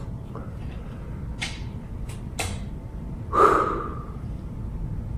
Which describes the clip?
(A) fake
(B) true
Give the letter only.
B